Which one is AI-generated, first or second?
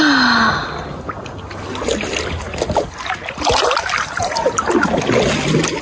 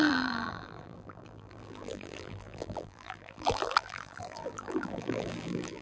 second